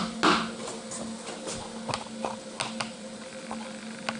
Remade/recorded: recorded